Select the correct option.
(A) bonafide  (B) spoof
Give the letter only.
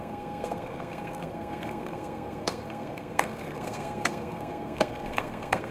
B